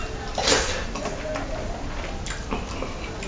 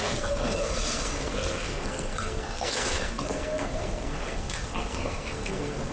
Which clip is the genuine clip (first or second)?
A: first